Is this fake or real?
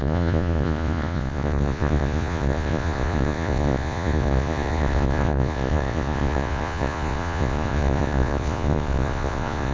fake